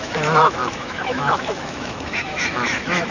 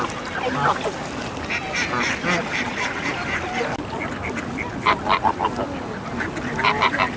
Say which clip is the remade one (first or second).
first